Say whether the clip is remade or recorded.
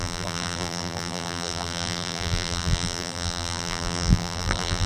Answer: remade